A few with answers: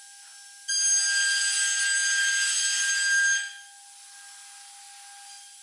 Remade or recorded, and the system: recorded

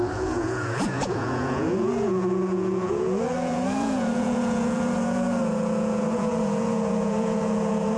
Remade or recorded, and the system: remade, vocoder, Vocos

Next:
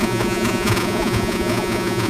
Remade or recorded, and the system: remade, vocoder, Vocos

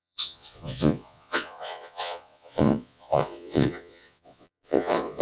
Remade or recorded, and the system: remade, vocoder, Vocos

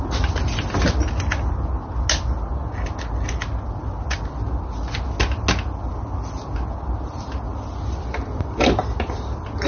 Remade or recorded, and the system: recorded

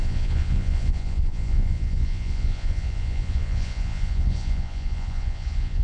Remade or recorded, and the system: remade, vocoder, Vocos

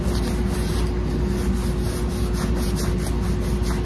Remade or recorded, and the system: recorded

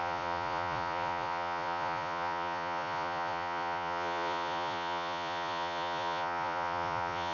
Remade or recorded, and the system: remade, vocoder, Vocos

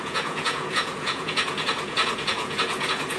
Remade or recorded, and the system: remade, vocoder, Vocos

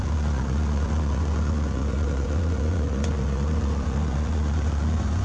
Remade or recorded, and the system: remade, vocoder, Vocos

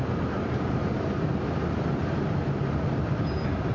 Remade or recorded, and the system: recorded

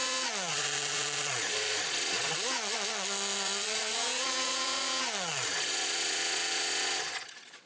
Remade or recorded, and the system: remade, vocoder, Vocos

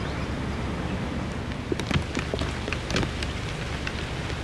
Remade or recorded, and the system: recorded